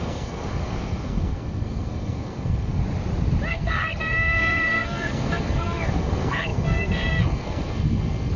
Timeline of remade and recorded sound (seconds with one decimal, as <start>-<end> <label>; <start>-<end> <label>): 0.0-2.8 remade; 2.8-3.5 recorded; 3.5-8.4 remade